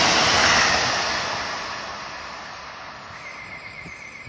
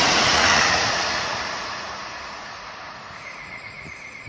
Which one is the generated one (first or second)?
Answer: second